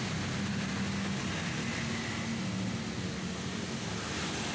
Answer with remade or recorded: recorded